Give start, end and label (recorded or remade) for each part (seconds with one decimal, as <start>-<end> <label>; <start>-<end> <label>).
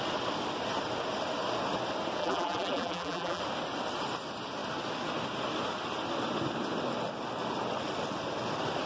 0.0-2.2 recorded; 2.2-3.4 remade; 3.4-8.9 recorded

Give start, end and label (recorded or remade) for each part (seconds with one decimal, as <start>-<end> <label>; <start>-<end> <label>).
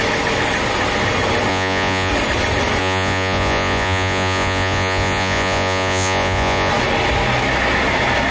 0.0-1.5 recorded; 1.5-2.1 remade; 2.1-2.8 recorded; 2.8-6.7 remade; 6.7-8.3 recorded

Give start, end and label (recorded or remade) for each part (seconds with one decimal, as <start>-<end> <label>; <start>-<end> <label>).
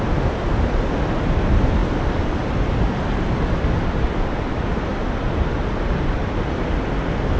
0.0-7.4 recorded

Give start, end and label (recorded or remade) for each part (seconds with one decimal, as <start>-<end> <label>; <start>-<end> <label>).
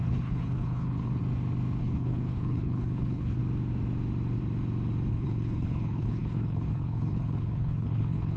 0.0-1.2 remade; 1.2-1.8 recorded; 1.8-3.4 remade; 3.4-5.1 recorded; 5.1-8.4 remade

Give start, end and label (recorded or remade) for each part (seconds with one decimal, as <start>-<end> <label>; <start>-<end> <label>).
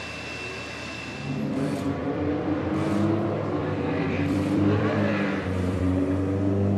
0.0-2.0 recorded; 2.0-2.7 remade; 2.7-3.6 recorded; 3.6-5.8 remade; 5.8-6.8 recorded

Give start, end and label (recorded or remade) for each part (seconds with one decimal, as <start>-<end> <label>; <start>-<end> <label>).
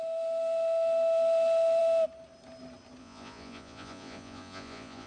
0.0-3.0 recorded; 3.0-5.1 remade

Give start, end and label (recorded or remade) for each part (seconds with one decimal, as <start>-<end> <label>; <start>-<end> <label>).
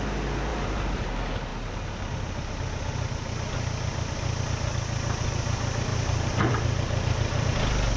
0.0-0.5 recorded; 0.5-1.1 remade; 1.1-5.9 recorded; 5.9-7.5 remade; 7.5-8.0 recorded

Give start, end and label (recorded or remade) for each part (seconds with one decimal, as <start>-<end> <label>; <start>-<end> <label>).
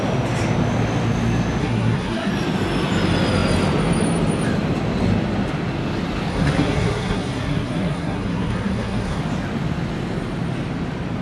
0.0-1.6 recorded; 1.6-2.3 remade; 2.3-6.3 recorded; 6.3-9.2 remade; 9.2-11.2 recorded